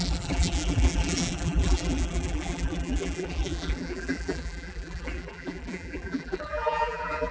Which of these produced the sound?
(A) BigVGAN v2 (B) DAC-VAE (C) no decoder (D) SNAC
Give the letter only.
A